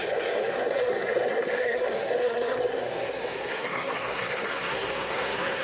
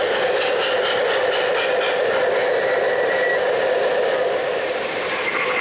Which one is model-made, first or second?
first